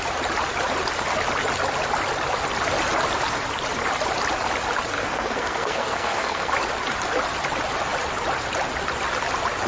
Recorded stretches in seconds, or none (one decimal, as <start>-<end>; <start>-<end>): 0.0-5.0; 6.5-9.7